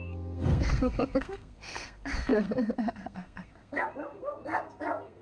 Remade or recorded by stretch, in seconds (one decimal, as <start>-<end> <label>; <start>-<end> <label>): 0.0-5.2 remade